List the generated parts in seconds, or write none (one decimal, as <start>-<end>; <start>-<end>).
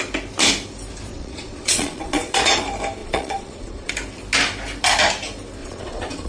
1.1-2.6; 3.0-3.9; 5.6-6.3